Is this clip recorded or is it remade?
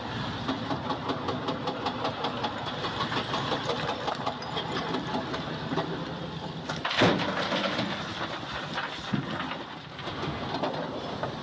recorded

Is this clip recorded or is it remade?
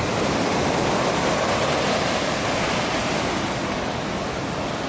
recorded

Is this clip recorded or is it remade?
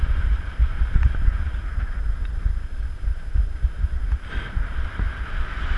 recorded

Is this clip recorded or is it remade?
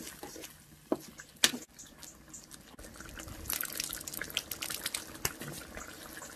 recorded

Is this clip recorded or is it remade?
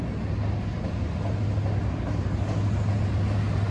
recorded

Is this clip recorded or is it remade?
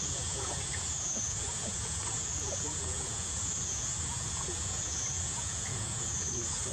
remade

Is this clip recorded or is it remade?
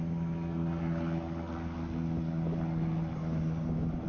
recorded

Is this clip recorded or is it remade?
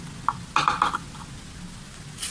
recorded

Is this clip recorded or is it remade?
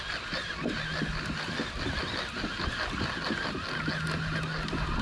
recorded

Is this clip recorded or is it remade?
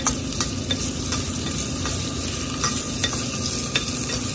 recorded